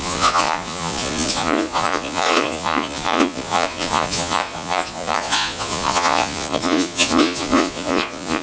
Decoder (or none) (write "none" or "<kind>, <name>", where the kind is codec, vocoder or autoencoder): vocoder, Vocos